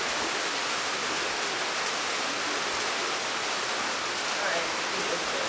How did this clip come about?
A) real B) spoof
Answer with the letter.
A